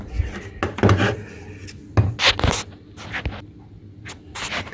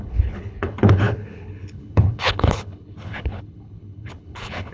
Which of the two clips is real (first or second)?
first